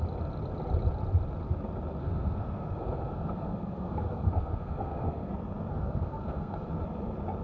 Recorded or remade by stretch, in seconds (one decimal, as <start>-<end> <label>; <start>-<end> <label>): 0.0-2.0 recorded; 2.0-5.3 remade; 5.3-5.7 recorded; 5.7-6.7 remade; 6.7-7.4 recorded